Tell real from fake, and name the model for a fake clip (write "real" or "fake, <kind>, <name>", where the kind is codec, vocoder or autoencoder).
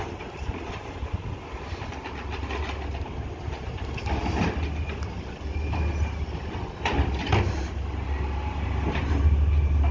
real